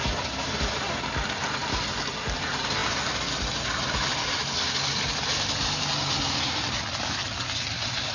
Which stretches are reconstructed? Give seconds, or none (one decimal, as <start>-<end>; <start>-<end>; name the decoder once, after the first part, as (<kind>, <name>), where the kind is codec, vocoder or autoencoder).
none